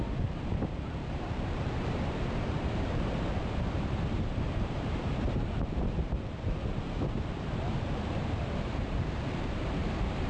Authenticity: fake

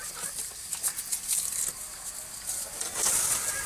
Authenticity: real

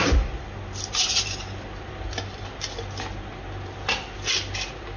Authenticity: real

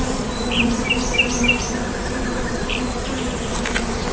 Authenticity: real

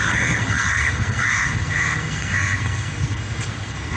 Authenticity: fake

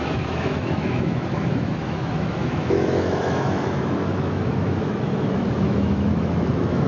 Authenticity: fake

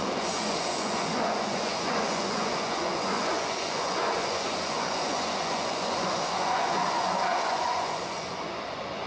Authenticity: fake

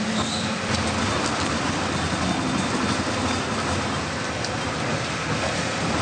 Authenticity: real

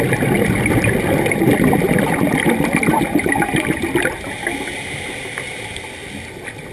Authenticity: real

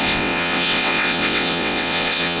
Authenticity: fake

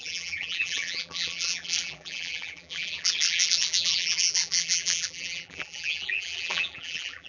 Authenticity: fake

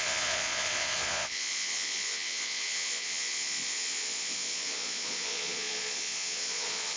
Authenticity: fake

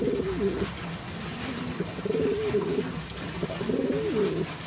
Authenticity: real